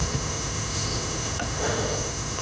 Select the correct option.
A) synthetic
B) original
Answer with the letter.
A